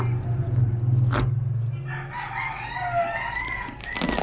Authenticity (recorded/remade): recorded